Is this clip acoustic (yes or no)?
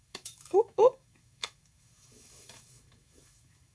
no